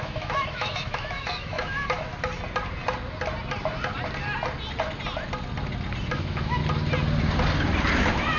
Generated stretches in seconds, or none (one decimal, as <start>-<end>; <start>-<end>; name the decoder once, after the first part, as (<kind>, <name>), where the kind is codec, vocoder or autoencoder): 0.0-2.1 (autoencoder, DAC-VAE); 6.1-6.6; 8.0-8.4